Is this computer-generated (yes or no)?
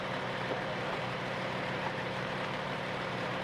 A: yes